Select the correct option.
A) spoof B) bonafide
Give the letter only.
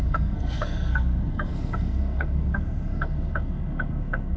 A